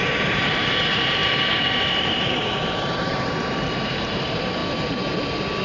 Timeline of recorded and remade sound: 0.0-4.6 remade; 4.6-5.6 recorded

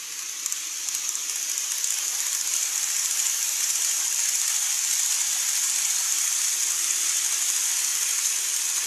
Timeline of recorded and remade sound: 0.0-8.9 recorded

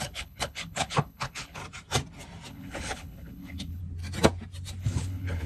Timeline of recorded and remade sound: 0.0-1.6 remade; 1.6-2.5 recorded; 2.5-3.8 remade; 3.8-4.8 recorded; 4.8-5.5 remade